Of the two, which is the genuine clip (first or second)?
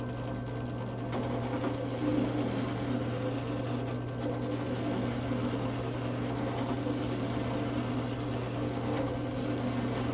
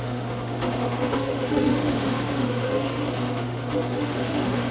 first